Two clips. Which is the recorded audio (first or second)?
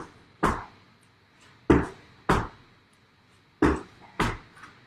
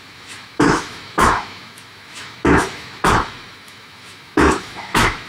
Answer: first